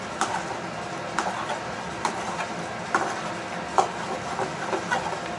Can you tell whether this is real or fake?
real